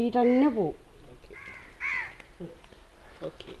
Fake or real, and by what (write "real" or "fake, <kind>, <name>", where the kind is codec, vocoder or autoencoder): real